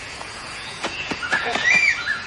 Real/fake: fake